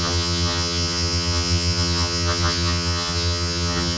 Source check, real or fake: fake